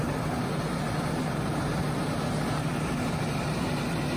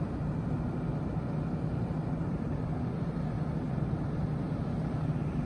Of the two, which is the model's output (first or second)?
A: second